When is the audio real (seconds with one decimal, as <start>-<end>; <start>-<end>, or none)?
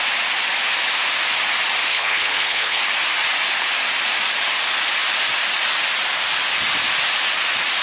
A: 0.0-1.9; 2.8-7.8